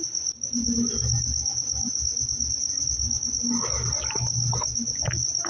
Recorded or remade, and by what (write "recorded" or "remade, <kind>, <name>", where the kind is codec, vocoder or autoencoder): recorded